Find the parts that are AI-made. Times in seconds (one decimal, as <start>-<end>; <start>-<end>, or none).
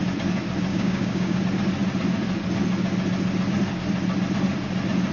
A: 0.7-1.4